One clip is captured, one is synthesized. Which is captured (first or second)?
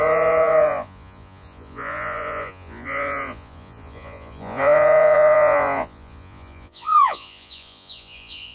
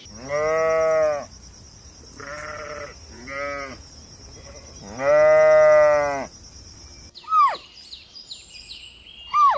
second